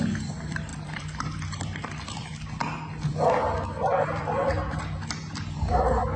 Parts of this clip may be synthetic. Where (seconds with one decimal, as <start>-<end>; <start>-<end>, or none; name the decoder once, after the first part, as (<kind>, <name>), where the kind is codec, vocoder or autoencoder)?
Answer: 0.0-6.2 (vocoder, BigVGAN v2)